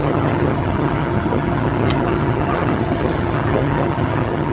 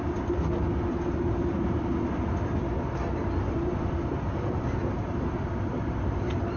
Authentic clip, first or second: second